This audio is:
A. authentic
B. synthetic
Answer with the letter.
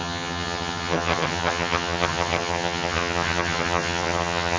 B